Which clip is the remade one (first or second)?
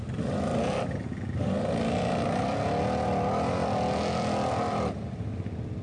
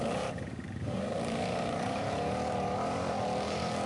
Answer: second